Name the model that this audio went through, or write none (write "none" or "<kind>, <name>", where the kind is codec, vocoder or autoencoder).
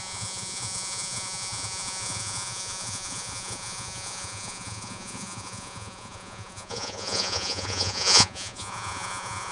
vocoder, Vocos